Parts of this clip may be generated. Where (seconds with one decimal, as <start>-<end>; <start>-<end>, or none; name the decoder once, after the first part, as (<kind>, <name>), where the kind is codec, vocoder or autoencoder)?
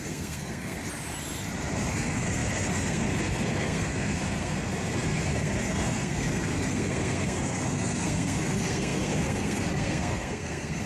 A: 0.0-0.8 (codec, SNAC); 1.9-10.9